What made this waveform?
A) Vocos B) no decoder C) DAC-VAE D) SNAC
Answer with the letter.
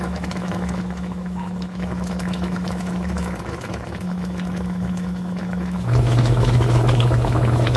C